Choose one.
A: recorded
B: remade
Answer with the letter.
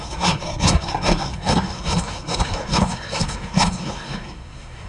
B